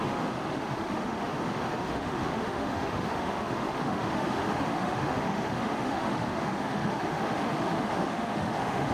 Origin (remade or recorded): remade